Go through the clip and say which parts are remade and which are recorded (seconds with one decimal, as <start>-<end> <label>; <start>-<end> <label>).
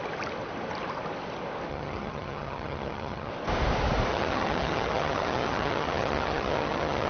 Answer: 0.0-1.7 recorded; 1.7-3.3 remade; 3.3-4.1 recorded; 4.1-7.1 remade